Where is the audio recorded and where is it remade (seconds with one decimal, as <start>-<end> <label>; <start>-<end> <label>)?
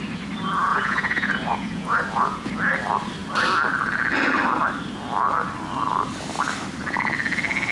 0.0-0.7 recorded; 0.7-2.5 remade; 2.5-7.7 recorded